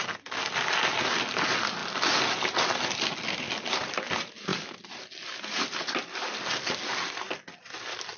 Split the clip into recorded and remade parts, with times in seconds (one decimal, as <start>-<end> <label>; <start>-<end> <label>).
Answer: 0.0-8.2 recorded